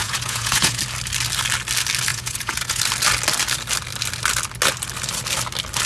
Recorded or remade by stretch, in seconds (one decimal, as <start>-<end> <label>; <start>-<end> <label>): 0.0-0.8 remade; 0.8-2.1 recorded; 2.1-2.8 remade; 2.8-5.9 recorded